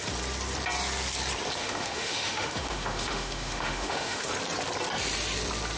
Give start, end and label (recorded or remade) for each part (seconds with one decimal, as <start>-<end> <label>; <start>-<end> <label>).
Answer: 0.0-1.6 recorded; 1.6-4.3 remade; 4.3-5.8 recorded